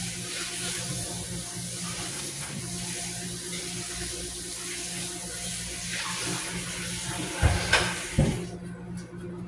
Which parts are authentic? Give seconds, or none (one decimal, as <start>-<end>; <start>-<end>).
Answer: 0.0-2.1; 2.6-9.5